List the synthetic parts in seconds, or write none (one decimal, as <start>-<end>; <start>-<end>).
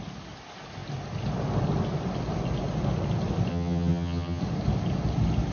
3.5-4.4